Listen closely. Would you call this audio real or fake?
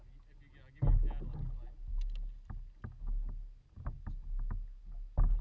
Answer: real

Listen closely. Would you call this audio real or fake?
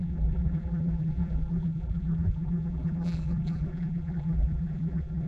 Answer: fake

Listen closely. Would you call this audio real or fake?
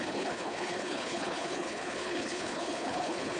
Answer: fake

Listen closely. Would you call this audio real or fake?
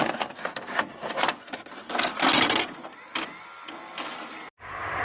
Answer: real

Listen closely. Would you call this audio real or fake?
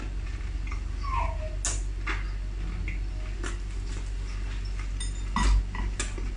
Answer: real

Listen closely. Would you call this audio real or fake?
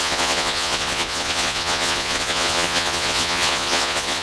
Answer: fake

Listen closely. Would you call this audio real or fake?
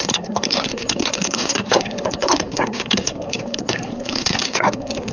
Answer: fake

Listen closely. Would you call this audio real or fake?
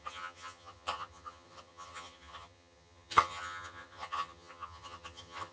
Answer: fake